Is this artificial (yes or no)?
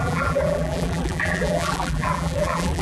yes